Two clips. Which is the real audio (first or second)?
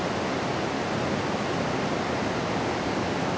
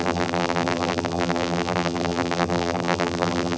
first